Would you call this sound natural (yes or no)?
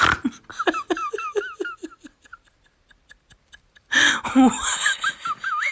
yes